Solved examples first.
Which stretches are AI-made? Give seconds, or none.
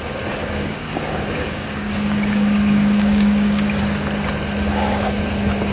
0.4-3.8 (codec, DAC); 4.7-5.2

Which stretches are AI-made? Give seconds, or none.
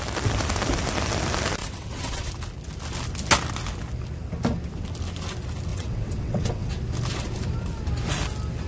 1.6-2.3 (vocoder, WaveNeXt); 5.7-6.8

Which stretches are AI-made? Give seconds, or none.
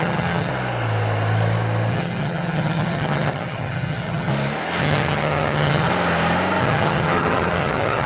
0.0-0.5 (vocoder, HiFi-GAN); 1.9-4.3; 4.8-5.9; 6.6-8.1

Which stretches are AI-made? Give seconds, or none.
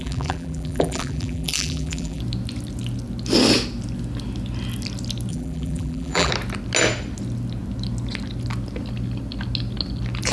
0.0-2.2 (vocoder, BigVGAN v2); 5.3-6.3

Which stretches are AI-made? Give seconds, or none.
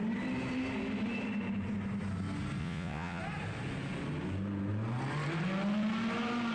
2.6-3.2 (vocoder, Vocos)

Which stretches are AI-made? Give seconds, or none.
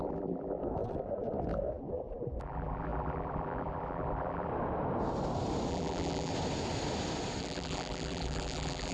0.0-0.6 (vocoder, BigVGAN v2); 2.4-4.5; 5.7-6.3; 7.4-8.9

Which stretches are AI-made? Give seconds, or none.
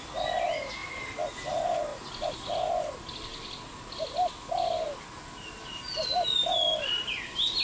none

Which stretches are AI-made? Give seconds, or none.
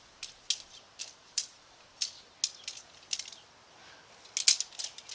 1.2-1.8 (vocoder, BigVGAN v2)